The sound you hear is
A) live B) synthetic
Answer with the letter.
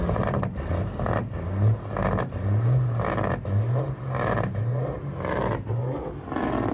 A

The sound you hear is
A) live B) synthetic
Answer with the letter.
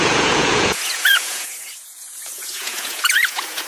B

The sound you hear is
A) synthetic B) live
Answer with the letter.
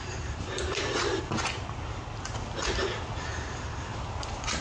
B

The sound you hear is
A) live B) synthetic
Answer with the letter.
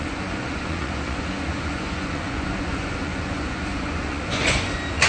B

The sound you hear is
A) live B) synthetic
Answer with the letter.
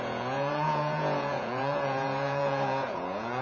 B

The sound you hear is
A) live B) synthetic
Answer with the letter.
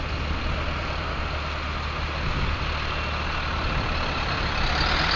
A